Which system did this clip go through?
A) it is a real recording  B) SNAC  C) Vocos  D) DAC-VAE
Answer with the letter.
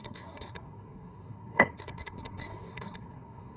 B